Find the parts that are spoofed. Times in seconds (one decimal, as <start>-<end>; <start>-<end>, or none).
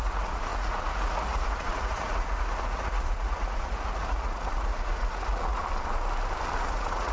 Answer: 0.0-5.6; 6.6-7.1